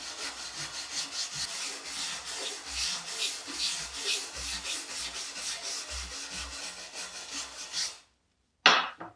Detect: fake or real real